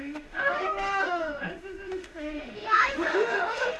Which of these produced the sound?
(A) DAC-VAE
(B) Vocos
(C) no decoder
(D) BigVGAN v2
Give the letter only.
A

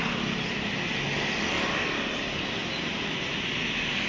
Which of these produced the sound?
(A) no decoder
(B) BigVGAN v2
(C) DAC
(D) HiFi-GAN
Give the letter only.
A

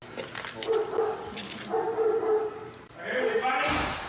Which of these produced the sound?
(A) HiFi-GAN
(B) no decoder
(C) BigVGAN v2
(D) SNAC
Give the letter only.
B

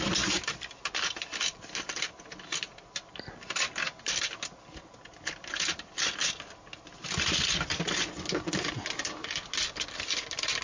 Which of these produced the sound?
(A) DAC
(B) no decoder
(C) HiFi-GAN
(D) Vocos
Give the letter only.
B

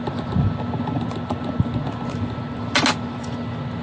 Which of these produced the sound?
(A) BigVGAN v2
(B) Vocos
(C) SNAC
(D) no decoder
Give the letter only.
D